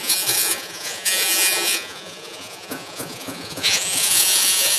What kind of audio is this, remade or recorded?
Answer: remade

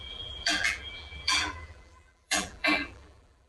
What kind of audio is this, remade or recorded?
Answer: remade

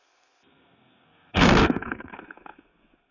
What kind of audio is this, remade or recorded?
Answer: remade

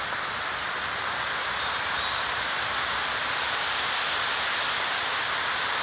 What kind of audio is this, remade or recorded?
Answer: recorded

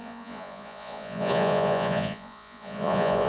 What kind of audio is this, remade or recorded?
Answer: remade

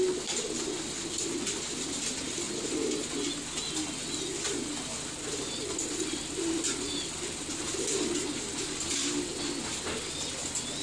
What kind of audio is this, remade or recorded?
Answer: recorded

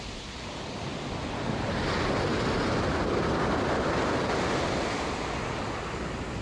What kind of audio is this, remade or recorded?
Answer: recorded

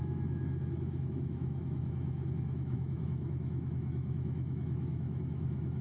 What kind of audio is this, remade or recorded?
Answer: remade